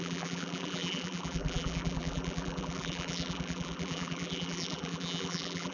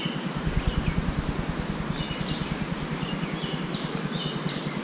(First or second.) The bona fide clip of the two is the second